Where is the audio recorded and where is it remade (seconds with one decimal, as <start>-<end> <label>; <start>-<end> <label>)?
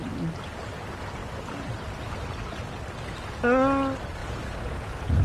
0.0-4.2 recorded; 4.2-5.2 remade